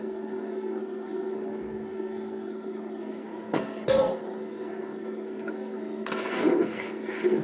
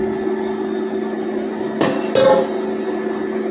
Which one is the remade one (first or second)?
first